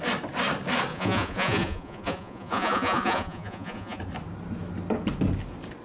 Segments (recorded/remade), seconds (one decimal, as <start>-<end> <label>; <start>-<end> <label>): 0.0-0.9 recorded; 0.9-4.0 remade; 4.0-5.8 recorded